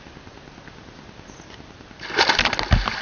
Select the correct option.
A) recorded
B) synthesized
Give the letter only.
A